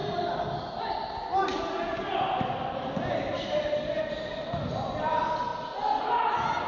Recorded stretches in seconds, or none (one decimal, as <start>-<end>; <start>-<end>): 0.0-6.7

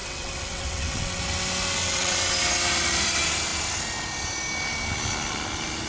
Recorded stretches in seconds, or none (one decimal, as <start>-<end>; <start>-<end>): 1.2-1.8; 2.3-5.9

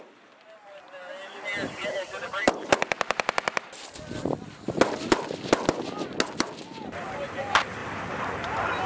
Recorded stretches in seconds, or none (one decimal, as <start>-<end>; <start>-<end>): 0.0-7.8; 8.3-8.9